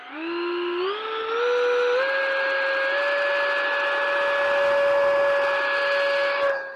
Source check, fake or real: real